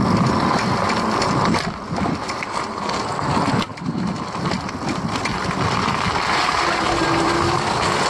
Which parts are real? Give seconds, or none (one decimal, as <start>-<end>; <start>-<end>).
0.0-8.1